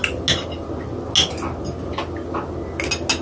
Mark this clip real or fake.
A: real